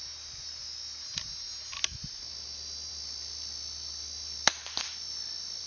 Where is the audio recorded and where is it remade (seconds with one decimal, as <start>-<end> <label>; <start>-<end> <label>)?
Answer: 0.0-5.7 recorded